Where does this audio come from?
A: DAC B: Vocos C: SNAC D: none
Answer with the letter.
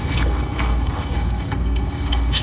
C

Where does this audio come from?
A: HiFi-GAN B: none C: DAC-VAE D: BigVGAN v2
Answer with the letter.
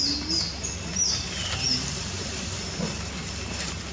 B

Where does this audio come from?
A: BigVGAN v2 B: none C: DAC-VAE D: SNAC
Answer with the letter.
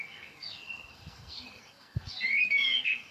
D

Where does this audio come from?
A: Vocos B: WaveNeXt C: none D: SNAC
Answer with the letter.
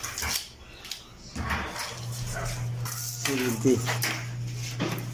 C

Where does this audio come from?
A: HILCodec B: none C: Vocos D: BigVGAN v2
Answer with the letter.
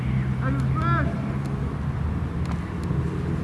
B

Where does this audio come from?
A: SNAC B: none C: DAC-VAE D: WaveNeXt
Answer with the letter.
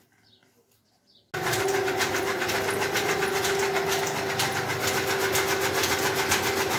B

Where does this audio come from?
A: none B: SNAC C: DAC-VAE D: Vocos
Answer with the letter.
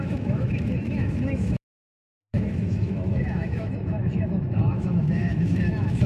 C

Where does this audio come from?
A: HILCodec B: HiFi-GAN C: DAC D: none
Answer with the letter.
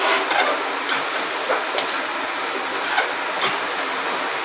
D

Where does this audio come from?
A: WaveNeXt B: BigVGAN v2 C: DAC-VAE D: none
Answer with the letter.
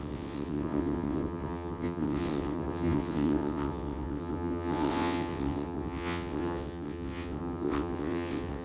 A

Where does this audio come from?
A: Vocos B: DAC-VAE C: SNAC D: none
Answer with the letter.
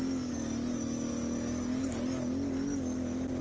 D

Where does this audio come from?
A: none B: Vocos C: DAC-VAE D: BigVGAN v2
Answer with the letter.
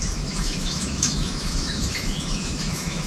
C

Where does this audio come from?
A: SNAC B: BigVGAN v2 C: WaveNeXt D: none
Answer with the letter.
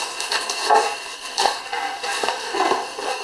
A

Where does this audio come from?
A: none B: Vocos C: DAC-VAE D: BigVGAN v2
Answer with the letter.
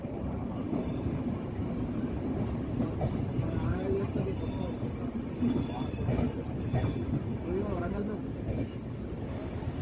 D